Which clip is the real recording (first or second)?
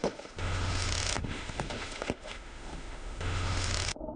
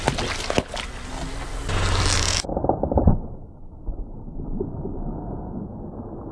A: second